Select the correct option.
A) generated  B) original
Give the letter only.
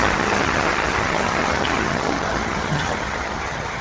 A